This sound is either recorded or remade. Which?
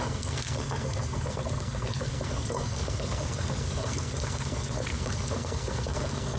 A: remade